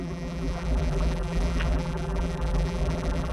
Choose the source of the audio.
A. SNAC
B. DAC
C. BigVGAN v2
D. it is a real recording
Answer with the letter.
C